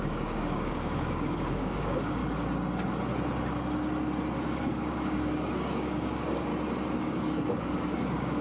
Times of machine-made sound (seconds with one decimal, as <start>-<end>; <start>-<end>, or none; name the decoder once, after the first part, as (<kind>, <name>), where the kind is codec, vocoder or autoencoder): 0.0-2.2 (codec, DAC); 4.4-6.5; 7.0-8.4

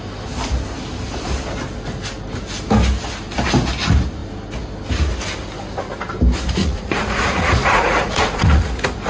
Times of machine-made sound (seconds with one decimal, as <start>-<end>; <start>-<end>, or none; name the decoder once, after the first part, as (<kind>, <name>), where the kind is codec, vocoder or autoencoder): 6.6-8.6 (vocoder, Vocos)

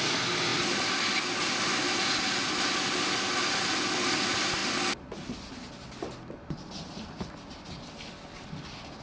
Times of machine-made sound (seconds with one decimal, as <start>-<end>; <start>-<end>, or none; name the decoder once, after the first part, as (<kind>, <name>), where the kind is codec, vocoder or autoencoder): none

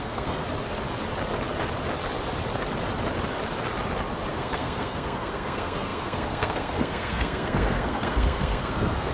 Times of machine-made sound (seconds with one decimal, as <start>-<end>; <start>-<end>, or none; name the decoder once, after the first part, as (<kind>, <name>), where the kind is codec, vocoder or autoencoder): 0.0-0.4 (codec, SNAC); 4.3-9.1

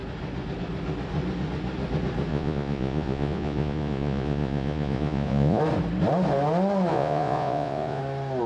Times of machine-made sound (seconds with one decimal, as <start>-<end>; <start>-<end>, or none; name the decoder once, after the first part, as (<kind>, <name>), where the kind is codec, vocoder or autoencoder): 2.3-5.6 (vocoder, Vocos); 6.9-8.0